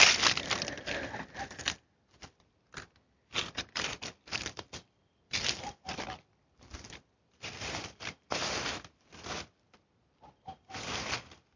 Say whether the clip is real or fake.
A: fake